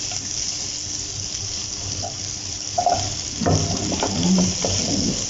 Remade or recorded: recorded